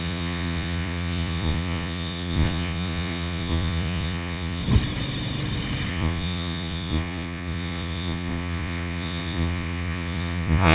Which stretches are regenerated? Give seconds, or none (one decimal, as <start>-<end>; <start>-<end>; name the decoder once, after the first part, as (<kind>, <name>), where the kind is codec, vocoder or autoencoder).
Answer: 0.0-4.6 (vocoder, Vocos); 5.9-10.7